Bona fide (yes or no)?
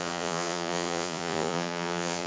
no